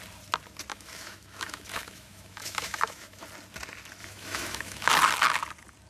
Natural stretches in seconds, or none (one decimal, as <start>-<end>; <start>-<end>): 0.0-0.7; 3.2-4.0; 4.9-5.9